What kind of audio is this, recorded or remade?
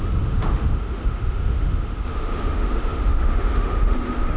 remade